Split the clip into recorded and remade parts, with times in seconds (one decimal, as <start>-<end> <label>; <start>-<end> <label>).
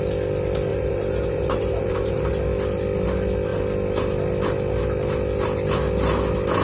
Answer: 0.0-0.7 recorded; 0.7-2.3 remade; 2.3-6.6 recorded